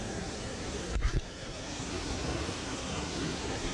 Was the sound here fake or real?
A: fake